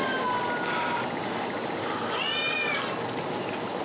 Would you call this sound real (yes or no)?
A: no